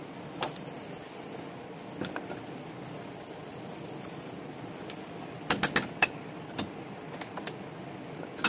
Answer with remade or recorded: recorded